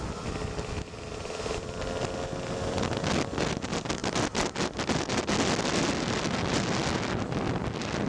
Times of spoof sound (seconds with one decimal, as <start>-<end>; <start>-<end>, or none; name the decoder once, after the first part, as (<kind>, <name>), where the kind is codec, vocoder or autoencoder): none